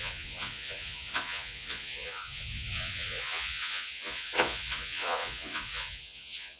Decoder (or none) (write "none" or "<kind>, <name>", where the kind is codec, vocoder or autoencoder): vocoder, Vocos